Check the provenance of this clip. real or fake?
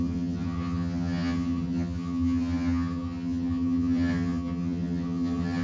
fake